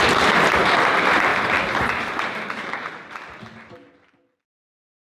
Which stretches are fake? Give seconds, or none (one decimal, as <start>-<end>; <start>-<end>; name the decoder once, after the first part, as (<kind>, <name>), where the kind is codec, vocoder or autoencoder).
1.3-3.1 (vocoder, BigVGAN v2)